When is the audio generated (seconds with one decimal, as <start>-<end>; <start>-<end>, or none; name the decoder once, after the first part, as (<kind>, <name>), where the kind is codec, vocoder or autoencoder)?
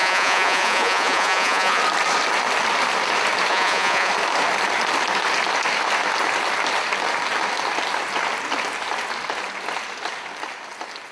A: 0.0-1.8 (vocoder, Vocos); 3.5-4.1